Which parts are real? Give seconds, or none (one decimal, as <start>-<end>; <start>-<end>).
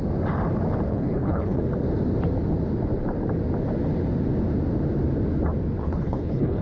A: 0.0-0.9; 1.6-5.8